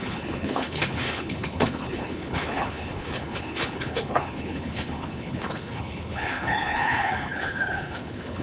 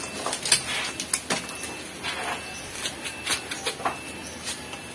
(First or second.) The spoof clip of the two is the first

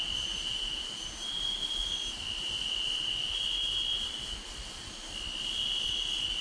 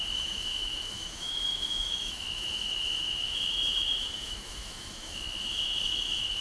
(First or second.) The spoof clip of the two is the second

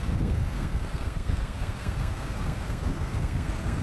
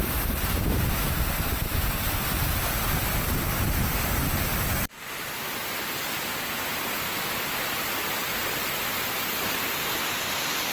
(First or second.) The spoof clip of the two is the first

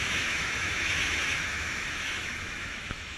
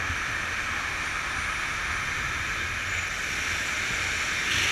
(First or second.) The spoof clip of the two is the first